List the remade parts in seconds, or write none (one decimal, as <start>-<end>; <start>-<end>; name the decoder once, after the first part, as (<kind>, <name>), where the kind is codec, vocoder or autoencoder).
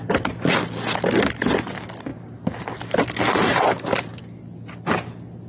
none